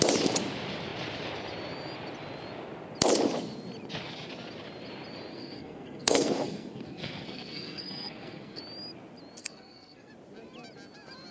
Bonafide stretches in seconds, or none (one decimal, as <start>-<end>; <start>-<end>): 0.0-5.3; 8.6-9.4; 10.1-11.3